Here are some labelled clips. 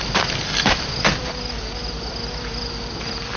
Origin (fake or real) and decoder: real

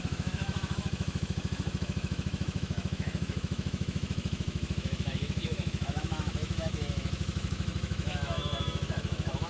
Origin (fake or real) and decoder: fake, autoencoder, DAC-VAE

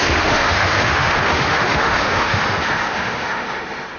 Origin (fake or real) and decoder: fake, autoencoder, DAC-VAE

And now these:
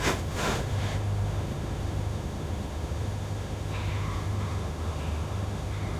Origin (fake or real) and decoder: fake, autoencoder, DAC-VAE